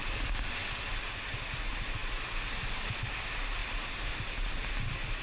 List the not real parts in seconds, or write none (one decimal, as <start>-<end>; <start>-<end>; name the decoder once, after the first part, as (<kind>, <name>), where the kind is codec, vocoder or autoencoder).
none

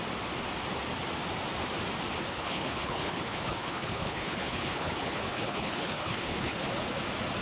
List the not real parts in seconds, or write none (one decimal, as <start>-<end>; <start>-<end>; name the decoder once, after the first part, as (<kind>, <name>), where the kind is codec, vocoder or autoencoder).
2.3-6.7 (codec, HILCodec)

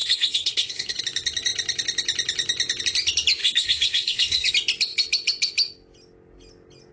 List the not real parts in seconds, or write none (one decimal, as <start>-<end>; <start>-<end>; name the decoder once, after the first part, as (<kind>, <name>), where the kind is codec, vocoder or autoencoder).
0.0-1.0 (codec, HILCodec); 3.4-4.5

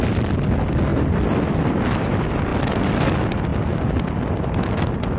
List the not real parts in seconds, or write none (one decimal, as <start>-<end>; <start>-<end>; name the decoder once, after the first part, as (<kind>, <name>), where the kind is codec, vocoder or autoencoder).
none